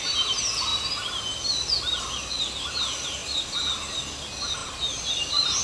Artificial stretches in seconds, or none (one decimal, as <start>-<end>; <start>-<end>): none